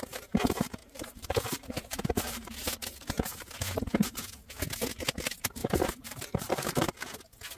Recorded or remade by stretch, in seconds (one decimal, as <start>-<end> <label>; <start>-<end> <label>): 0.0-0.8 recorded; 0.8-2.5 remade; 2.5-5.6 recorded; 5.6-6.9 remade; 6.9-7.6 recorded